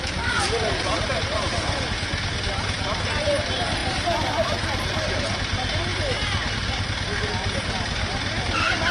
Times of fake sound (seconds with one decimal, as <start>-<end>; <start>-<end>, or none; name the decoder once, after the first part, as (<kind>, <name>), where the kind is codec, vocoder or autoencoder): none